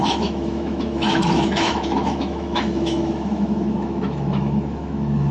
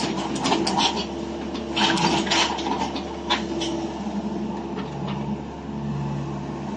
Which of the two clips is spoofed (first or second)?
first